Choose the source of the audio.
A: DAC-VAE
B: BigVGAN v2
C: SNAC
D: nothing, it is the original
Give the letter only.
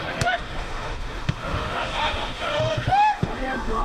A